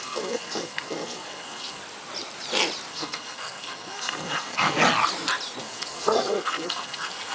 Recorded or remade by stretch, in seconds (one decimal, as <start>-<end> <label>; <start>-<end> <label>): 0.0-1.8 remade; 1.8-2.9 recorded; 2.9-4.8 remade; 4.8-5.6 recorded; 5.6-7.3 remade

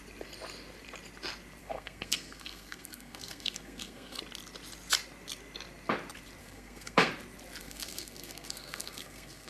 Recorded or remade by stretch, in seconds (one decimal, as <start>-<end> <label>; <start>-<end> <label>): 0.0-1.6 recorded; 1.6-4.2 remade; 4.2-6.4 recorded; 6.4-7.1 remade; 7.1-7.6 recorded; 7.6-9.5 remade

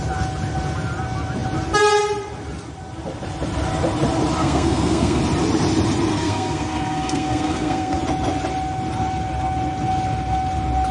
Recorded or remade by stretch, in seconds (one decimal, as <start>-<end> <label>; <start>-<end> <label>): 0.0-4.4 recorded; 4.4-5.2 remade; 5.2-6.1 recorded; 6.1-8.0 remade; 8.0-10.9 recorded

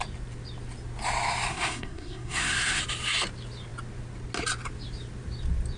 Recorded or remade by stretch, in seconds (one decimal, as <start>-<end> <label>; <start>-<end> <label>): 0.0-1.5 recorded; 1.5-2.8 remade; 2.8-5.8 recorded

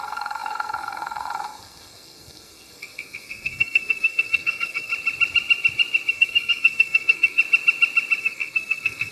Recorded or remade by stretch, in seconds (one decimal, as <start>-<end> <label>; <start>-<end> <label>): 0.0-4.9 remade; 4.9-6.1 recorded; 6.1-7.4 remade; 7.4-8.2 recorded; 8.2-9.1 remade

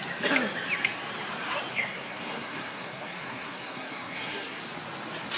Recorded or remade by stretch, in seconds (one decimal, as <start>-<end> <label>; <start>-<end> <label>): 0.0-1.7 recorded; 1.7-4.6 remade; 4.6-5.4 recorded

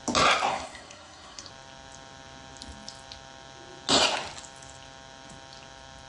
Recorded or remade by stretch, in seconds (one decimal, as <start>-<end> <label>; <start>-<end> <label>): 0.0-0.5 recorded; 0.5-1.5 remade; 1.5-6.1 recorded

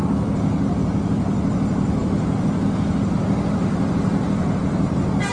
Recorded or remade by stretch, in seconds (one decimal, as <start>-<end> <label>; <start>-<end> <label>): 0.0-5.3 recorded